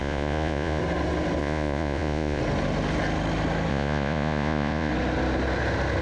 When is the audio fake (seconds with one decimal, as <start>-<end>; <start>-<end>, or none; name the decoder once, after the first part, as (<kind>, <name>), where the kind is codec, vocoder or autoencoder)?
0.0-0.8 (vocoder, Vocos); 1.4-2.4; 3.7-4.9